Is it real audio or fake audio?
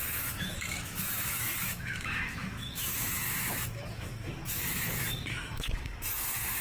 fake